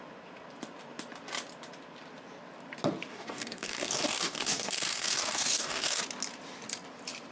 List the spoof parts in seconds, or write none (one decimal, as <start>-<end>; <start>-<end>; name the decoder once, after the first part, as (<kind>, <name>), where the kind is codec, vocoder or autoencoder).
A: 3.1-6.0 (codec, DAC)